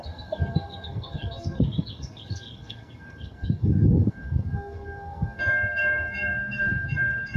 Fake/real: fake